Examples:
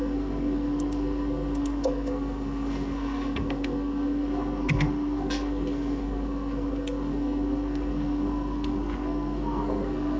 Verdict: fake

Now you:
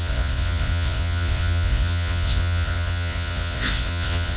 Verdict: fake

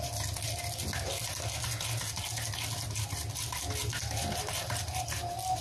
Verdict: real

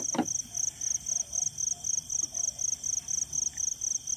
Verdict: real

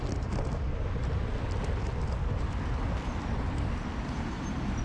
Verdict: fake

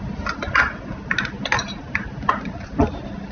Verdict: real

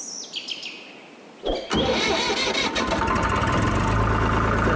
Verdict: real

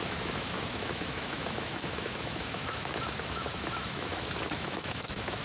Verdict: fake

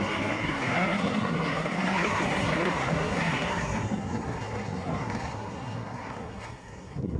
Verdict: fake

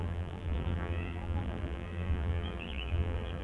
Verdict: fake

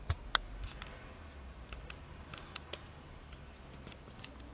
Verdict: real